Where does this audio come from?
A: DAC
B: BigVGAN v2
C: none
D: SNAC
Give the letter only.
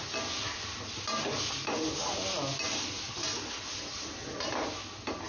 C